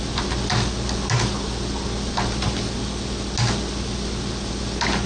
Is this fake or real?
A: real